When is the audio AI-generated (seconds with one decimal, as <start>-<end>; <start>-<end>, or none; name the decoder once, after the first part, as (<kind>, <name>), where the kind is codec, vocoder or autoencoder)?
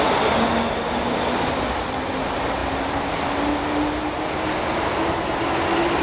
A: none